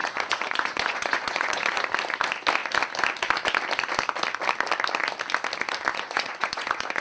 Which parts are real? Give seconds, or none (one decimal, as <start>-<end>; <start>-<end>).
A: 1.8-5.9